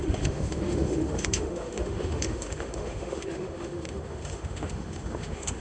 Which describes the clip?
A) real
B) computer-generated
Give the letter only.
B